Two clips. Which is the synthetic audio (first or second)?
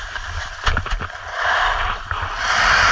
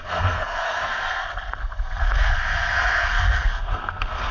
second